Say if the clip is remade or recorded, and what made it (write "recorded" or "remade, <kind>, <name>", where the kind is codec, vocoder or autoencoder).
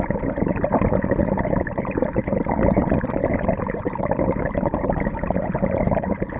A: remade, vocoder, BigVGAN v2